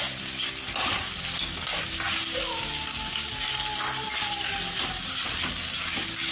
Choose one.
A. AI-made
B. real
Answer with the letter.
B